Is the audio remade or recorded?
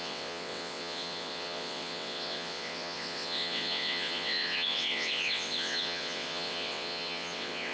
remade